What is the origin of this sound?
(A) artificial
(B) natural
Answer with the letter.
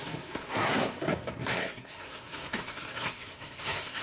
A